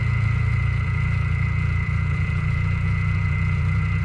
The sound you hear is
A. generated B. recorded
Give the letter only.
A